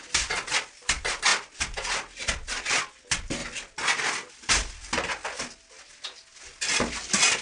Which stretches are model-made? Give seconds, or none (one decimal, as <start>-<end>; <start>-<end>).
none